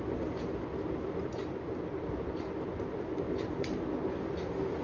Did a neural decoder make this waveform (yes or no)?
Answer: no